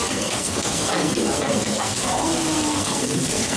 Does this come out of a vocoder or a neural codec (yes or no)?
yes